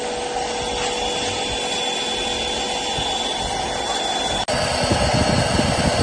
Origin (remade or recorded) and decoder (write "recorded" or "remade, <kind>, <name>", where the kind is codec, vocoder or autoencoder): recorded